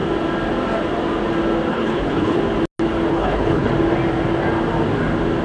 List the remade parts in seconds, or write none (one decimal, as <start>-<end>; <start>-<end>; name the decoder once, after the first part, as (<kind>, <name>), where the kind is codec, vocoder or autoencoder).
1.7-2.4 (codec, HILCodec); 3.1-3.7

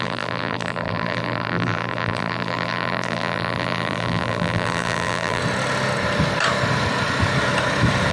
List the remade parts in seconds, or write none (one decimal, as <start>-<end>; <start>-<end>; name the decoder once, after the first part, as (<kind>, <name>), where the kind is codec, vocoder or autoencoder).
0.0-5.4 (vocoder, BigVGAN v2)

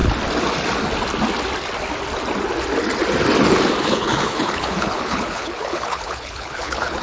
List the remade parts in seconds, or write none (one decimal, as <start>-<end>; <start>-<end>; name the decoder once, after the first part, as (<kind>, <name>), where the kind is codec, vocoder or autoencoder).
3.8-7.0 (codec, HILCodec)

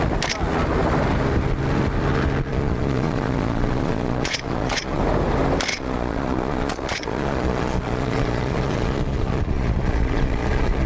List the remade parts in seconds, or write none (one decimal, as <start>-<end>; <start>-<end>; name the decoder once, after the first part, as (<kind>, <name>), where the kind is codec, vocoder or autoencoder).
2.5-5.0 (vocoder, Vocos); 5.7-10.9

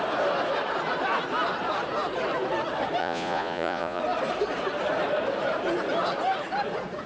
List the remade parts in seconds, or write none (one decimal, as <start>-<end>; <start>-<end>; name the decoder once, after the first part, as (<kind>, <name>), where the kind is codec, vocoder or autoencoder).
3.0-4.0 (vocoder, Vocos)

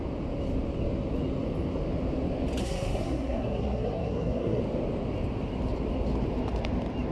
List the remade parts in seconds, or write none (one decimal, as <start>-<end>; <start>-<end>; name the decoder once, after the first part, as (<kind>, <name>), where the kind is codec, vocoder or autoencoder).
2.6-4.6 (codec, SNAC)

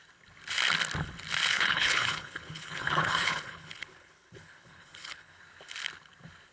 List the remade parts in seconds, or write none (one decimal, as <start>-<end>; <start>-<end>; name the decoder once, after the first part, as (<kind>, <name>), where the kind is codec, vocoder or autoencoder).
1.5-5.4 (codec, HILCodec)

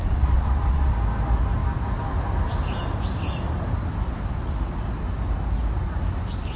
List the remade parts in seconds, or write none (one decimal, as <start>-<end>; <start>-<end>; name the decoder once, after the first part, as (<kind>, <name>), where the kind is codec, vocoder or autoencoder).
0.0-0.9 (vocoder, WaveNeXt)